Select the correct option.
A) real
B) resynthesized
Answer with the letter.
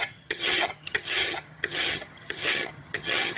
B